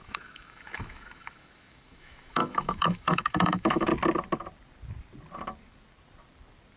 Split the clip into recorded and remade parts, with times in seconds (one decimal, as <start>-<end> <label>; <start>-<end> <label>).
0.0-3.9 remade; 3.9-6.8 recorded